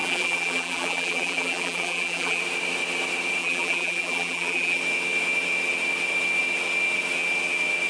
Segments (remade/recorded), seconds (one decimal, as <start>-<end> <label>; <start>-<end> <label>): 0.0-2.4 remade; 2.4-3.4 recorded; 3.4-4.8 remade; 4.8-7.9 recorded